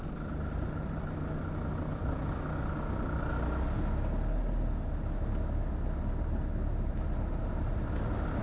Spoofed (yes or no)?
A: no